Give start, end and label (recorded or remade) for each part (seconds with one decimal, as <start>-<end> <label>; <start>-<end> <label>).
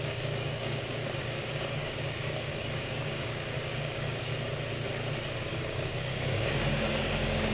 0.0-4.3 remade; 4.3-5.5 recorded; 5.5-7.5 remade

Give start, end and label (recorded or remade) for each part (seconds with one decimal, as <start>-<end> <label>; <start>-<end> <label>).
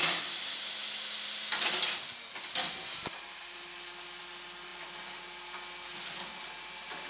0.0-7.1 recorded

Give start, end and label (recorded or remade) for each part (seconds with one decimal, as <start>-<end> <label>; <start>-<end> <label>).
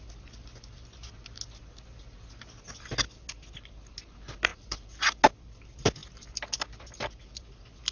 0.0-4.5 recorded; 4.5-5.2 remade; 5.2-7.9 recorded